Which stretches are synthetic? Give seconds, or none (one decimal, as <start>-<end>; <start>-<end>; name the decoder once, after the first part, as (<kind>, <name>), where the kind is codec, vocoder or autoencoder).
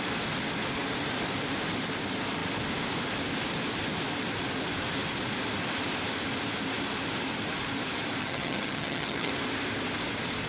8.2-9.3 (vocoder, HiFi-GAN)